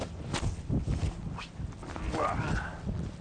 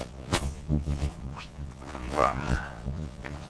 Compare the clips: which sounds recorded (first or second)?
first